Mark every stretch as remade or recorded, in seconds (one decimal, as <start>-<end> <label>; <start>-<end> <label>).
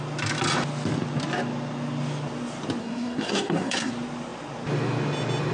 0.0-2.8 recorded; 2.8-3.9 remade; 3.9-5.5 recorded